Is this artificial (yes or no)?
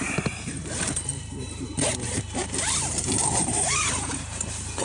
yes